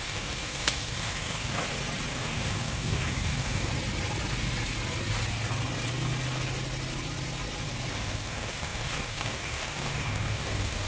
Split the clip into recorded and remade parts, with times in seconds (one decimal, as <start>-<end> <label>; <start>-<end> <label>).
0.0-1.6 remade; 1.6-2.1 recorded; 2.1-3.7 remade; 3.7-7.9 recorded; 7.9-10.9 remade